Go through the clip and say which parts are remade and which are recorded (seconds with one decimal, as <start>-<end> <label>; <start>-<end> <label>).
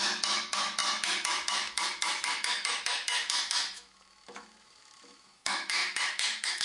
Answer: 0.0-6.6 remade